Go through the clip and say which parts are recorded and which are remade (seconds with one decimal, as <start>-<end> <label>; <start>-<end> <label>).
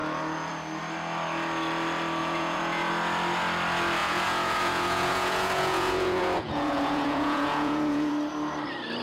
0.0-2.2 recorded; 2.2-2.9 remade; 2.9-4.0 recorded; 4.0-8.1 remade; 8.1-9.0 recorded